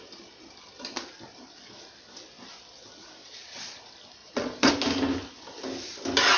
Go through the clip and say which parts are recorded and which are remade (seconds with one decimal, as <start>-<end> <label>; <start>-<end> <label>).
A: 0.0-3.2 recorded; 3.2-3.8 remade; 3.8-4.2 recorded; 4.2-4.7 remade; 4.7-6.4 recorded